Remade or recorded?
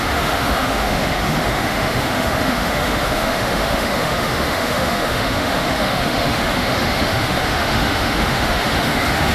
remade